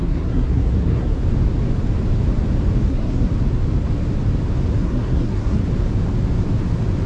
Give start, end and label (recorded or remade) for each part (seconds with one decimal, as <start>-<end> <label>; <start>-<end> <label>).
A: 0.0-1.2 remade; 1.2-2.9 recorded; 2.9-3.3 remade; 3.3-4.8 recorded; 4.8-5.6 remade; 5.6-7.1 recorded